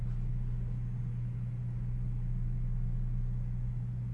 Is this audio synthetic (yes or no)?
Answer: no